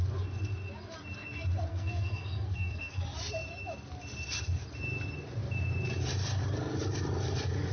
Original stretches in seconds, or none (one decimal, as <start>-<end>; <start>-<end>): 0.0-1.7; 3.0-7.7